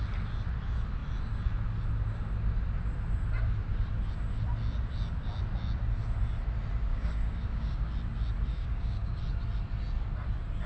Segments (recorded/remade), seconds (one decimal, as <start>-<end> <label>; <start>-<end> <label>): 0.0-6.9 recorded; 6.9-7.9 remade; 7.9-8.5 recorded; 8.5-9.2 remade; 9.2-10.7 recorded